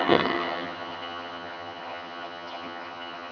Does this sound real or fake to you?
fake